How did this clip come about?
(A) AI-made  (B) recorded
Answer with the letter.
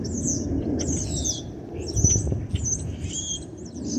B